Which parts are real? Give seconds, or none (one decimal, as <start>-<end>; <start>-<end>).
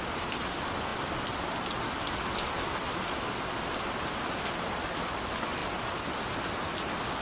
0.9-4.4; 5.6-6.2